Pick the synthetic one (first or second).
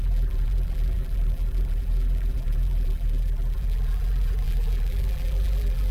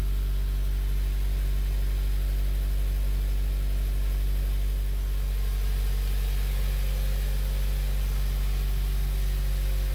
first